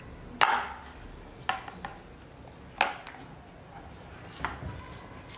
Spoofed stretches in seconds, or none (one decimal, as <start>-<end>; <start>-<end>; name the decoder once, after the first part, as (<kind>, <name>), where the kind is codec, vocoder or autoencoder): none